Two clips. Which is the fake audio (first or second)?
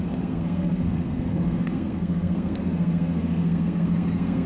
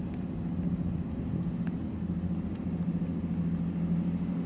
first